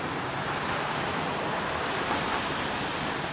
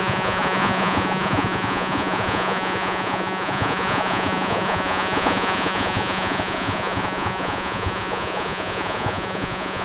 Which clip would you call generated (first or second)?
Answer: second